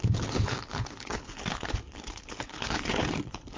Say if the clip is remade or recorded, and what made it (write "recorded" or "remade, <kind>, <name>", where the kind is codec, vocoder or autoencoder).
remade, codec, HILCodec